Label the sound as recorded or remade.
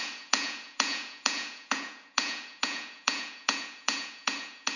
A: remade